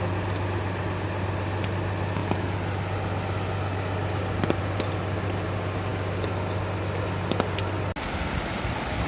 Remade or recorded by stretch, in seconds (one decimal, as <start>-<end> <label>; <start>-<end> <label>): 0.0-9.1 recorded